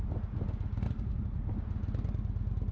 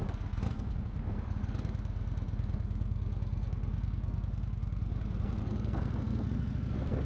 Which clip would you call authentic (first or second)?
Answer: first